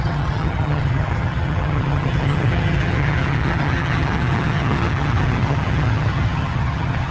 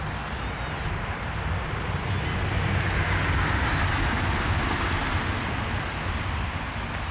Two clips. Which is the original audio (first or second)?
second